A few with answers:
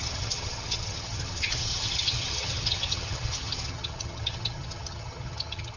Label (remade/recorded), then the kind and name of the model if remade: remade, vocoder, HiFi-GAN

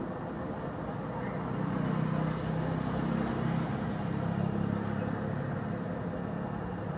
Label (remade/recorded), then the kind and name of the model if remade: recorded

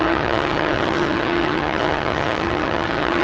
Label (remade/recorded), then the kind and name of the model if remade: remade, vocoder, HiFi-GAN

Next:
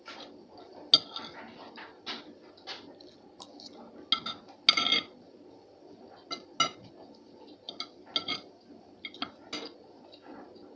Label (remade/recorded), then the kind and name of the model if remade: recorded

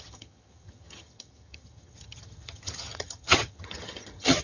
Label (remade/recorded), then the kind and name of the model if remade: remade, vocoder, HiFi-GAN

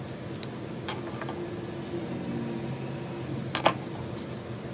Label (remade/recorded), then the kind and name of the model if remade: recorded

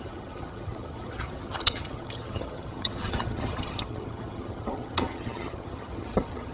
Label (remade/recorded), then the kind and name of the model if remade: remade, vocoder, HiFi-GAN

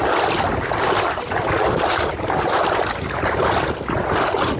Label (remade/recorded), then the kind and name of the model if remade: recorded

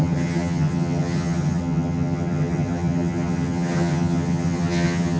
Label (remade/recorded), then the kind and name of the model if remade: remade, vocoder, HiFi-GAN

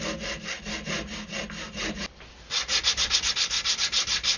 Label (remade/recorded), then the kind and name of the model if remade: recorded